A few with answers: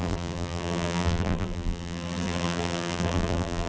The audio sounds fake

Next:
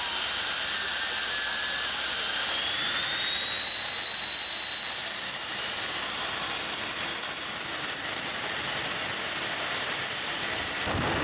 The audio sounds fake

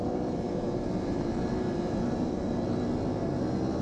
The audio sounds fake